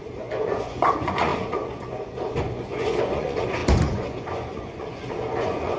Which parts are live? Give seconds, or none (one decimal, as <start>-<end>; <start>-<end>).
none